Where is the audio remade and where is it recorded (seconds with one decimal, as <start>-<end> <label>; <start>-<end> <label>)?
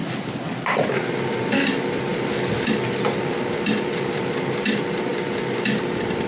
0.0-1.0 recorded; 1.0-6.3 remade